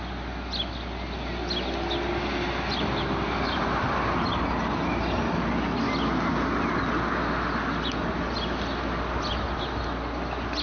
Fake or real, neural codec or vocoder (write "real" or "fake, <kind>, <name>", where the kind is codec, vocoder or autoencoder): real